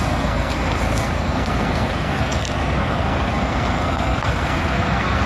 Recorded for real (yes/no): no